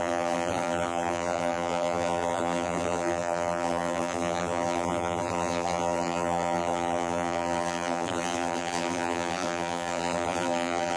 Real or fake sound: fake